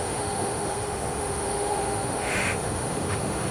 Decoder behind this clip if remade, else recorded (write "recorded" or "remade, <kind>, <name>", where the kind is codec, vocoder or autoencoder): remade, autoencoder, DAC-VAE